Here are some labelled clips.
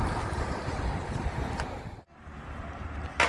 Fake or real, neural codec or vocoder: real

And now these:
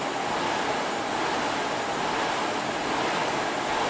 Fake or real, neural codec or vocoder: real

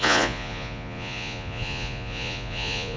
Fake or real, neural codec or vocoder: fake, vocoder, Vocos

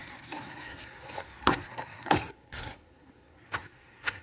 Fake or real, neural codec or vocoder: fake, codec, SNAC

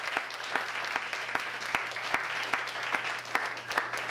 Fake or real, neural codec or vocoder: real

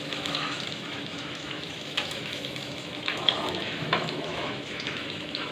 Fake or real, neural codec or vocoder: fake, autoencoder, DAC-VAE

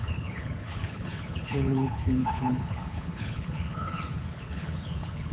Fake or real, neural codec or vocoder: fake, codec, HILCodec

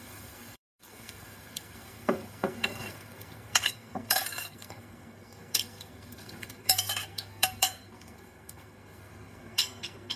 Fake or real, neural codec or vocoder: fake, codec, SNAC